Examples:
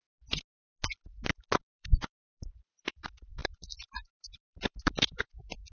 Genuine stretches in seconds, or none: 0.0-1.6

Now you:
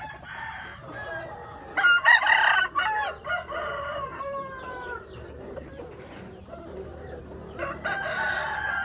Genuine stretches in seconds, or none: 0.7-2.2

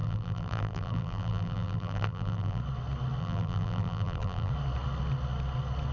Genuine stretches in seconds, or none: 2.6-3.2; 4.5-5.9

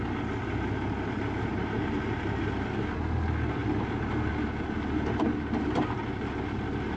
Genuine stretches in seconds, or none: 0.0-1.5; 2.2-7.0

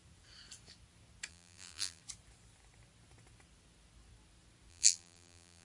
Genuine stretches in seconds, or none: 0.0-1.3; 2.0-4.7

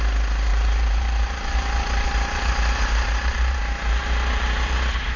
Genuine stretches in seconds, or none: 0.0-0.5; 3.6-5.2

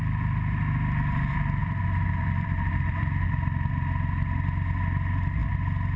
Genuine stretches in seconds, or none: 0.0-1.6; 3.7-6.0

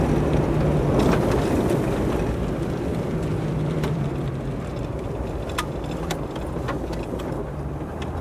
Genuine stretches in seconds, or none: 0.0-2.9; 4.1-8.2